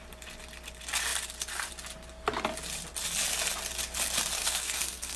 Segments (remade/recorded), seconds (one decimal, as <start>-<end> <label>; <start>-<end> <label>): 0.0-4.4 recorded; 4.4-5.2 remade